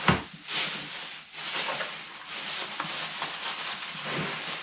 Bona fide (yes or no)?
yes